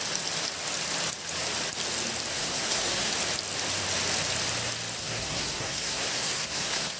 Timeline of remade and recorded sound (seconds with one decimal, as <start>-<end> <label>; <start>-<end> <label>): 0.0-2.3 recorded; 2.3-3.1 remade; 3.1-5.0 recorded; 5.0-7.0 remade